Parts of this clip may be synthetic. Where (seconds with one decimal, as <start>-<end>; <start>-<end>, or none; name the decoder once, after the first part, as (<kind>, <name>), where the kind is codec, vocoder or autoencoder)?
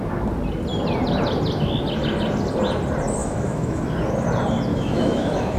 3.2-3.8 (autoencoder, DAC-VAE); 4.7-5.6